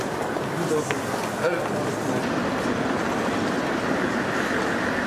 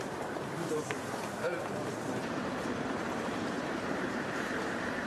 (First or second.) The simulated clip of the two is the second